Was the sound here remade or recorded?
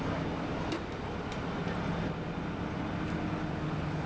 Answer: recorded